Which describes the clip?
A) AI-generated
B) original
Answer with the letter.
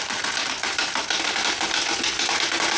B